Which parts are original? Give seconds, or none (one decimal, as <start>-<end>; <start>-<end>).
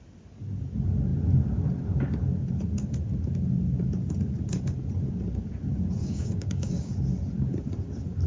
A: 0.0-6.0; 6.9-8.3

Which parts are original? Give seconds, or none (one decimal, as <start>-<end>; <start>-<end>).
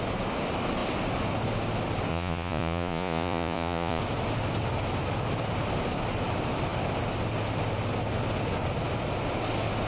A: 0.0-2.1; 4.0-9.9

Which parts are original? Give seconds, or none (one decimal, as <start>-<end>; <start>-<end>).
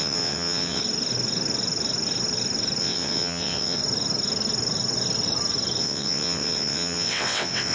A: 0.8-2.8; 3.8-5.8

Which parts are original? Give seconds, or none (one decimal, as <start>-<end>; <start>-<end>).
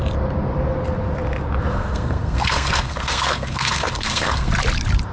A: 0.0-1.7; 4.5-5.1